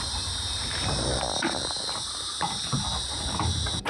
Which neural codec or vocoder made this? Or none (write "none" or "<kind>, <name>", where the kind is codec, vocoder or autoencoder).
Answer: vocoder, BigVGAN v2